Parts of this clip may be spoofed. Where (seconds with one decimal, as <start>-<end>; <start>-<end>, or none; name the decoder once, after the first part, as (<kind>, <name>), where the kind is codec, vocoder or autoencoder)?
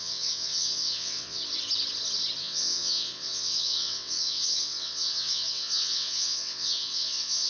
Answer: 0.0-1.4 (vocoder, WaveNeXt); 2.4-7.5